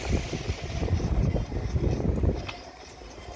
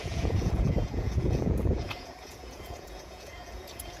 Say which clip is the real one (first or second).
first